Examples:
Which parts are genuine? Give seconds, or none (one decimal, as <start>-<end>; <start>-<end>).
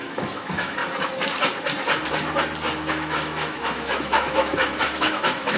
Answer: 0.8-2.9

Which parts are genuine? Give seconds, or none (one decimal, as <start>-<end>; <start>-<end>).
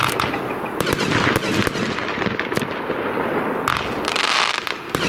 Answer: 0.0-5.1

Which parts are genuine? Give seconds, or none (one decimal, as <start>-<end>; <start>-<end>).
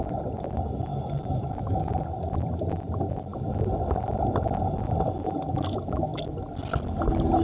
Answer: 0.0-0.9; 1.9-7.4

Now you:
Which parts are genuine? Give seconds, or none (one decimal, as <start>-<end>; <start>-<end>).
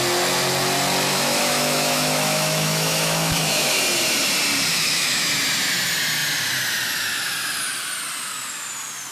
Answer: 0.0-1.1; 3.8-4.7; 5.3-9.1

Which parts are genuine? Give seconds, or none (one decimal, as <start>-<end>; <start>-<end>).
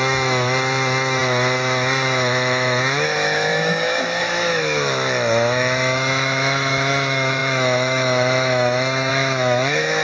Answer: none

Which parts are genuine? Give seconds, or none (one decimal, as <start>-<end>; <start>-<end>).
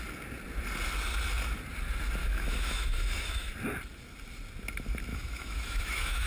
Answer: 0.0-2.2; 3.5-5.1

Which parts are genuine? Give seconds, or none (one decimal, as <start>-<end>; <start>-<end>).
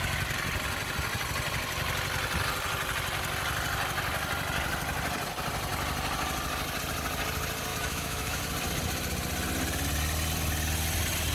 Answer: 0.0-7.7; 8.4-11.3